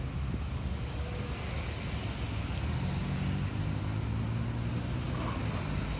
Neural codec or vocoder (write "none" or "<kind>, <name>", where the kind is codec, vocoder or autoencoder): none